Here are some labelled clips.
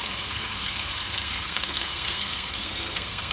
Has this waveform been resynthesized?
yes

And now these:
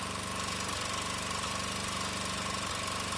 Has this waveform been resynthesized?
no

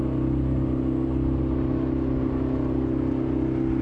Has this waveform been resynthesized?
no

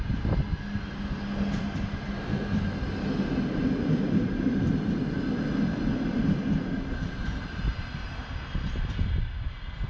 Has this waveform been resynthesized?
no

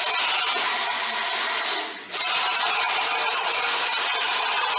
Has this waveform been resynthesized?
no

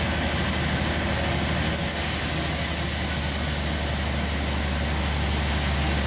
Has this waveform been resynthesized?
no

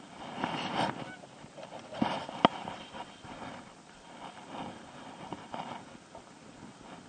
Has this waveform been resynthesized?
no